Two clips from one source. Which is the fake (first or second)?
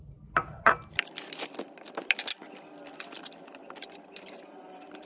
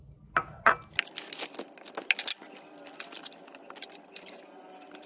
first